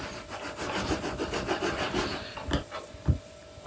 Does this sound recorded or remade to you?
recorded